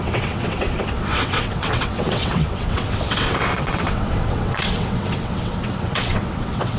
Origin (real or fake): fake